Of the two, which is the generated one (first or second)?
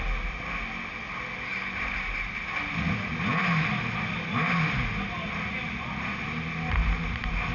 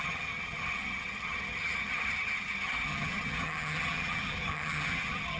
second